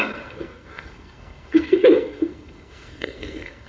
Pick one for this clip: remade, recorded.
remade